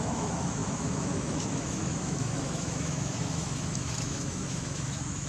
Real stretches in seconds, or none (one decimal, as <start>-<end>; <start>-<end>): none

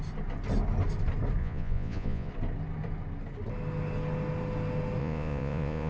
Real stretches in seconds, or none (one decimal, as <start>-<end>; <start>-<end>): 0.0-1.4; 2.3-5.0

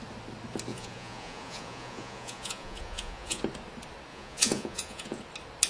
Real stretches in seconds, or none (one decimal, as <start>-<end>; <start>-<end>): 0.0-0.7; 3.4-4.1; 5.2-5.7